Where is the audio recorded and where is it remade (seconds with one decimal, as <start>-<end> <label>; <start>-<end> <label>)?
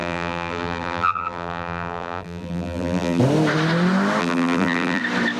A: 0.0-3.2 remade; 3.2-4.2 recorded; 4.2-5.0 remade; 5.0-5.4 recorded